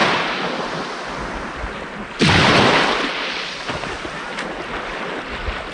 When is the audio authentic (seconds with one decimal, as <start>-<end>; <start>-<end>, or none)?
0.0-5.7

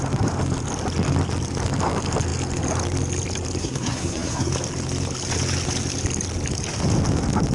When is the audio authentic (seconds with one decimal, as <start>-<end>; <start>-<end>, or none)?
0.0-3.6; 4.5-7.5

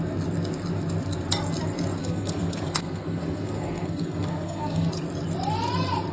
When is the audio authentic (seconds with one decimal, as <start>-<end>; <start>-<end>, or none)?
0.0-2.0; 4.9-6.1